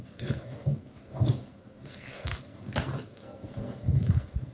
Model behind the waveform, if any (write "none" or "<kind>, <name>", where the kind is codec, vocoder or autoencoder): codec, SNAC